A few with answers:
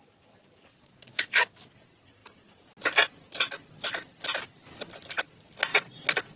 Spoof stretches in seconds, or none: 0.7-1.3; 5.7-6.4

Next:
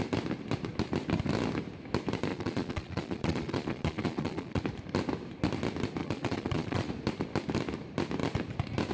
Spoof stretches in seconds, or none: 2.3-4.6; 6.0-6.9

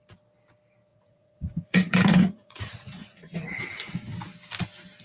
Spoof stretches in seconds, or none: 0.9-3.9

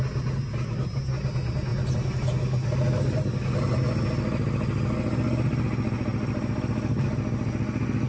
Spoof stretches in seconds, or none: none